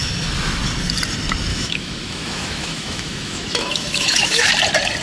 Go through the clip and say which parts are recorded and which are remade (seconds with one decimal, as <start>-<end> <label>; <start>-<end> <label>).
0.0-1.5 recorded; 1.5-4.5 remade; 4.5-5.0 recorded